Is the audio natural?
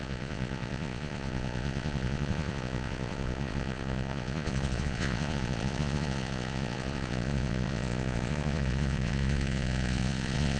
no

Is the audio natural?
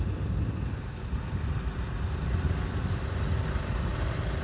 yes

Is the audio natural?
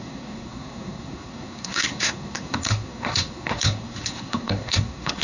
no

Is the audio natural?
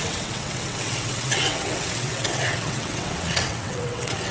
no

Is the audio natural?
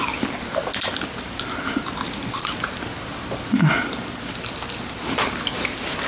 yes